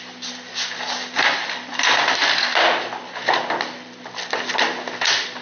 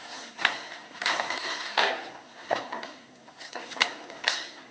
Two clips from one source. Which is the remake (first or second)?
second